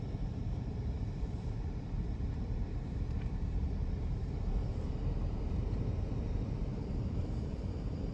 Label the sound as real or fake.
fake